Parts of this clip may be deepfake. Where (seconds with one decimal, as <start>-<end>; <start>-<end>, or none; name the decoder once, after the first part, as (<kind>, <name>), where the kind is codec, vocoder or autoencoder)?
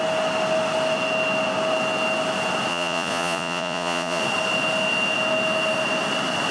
2.7-4.2 (vocoder, Vocos)